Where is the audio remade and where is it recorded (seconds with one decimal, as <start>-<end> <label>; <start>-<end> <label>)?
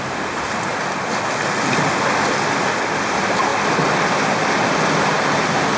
0.0-5.8 recorded